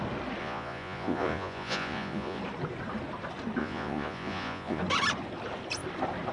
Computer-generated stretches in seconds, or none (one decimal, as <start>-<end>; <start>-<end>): 0.4-2.4; 3.6-4.8